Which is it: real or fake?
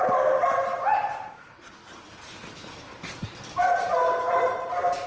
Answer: real